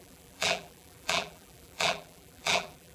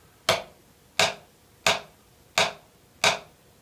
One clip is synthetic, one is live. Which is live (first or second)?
second